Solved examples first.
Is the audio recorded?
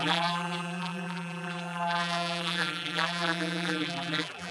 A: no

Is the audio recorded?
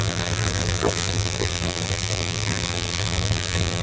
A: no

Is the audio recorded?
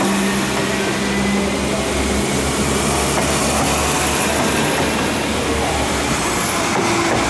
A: yes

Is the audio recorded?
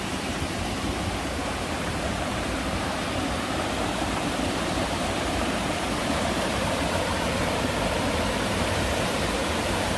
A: no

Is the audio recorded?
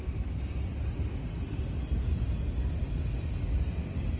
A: no